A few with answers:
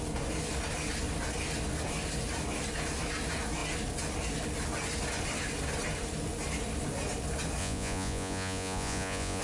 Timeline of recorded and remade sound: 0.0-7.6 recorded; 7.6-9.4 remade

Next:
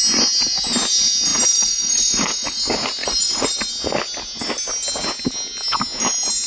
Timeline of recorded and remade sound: 0.0-1.3 recorded; 1.3-1.9 remade; 1.9-3.0 recorded; 3.0-3.6 remade; 3.6-6.5 recorded